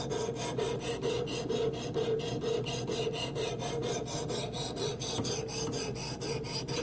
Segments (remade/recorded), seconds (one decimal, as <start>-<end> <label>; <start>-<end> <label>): 0.0-6.0 recorded; 6.0-6.8 remade